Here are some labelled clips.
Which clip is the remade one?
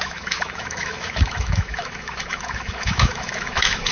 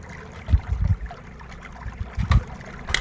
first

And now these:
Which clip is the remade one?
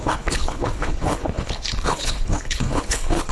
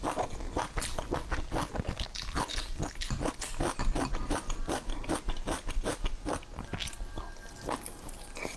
first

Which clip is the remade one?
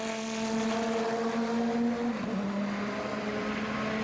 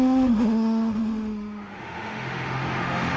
second